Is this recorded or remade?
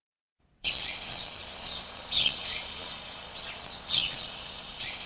remade